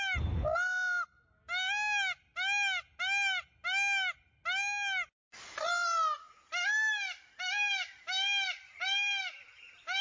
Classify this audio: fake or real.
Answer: real